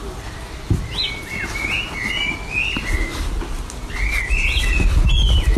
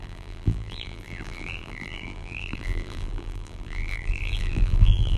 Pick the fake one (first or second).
second